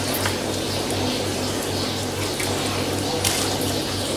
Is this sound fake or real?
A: real